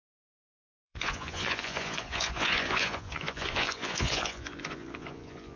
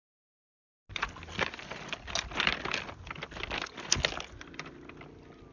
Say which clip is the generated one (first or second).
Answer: first